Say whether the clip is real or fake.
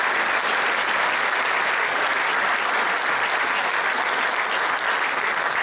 real